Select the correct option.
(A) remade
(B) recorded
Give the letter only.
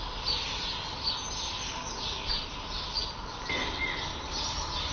B